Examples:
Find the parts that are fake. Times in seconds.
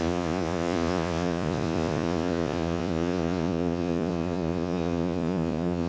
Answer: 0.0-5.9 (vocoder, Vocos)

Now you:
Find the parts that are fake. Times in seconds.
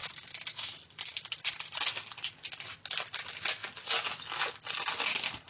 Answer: none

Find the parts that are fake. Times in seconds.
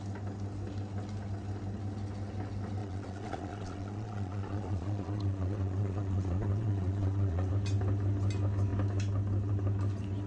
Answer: 2.8-7.5 (vocoder, Vocos)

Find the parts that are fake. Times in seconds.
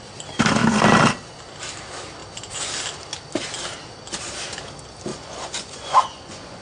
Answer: 5.1-6.6 (vocoder, Vocos)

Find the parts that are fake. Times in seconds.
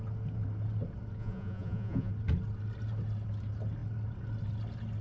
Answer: 1.2-2.1 (vocoder, Vocos)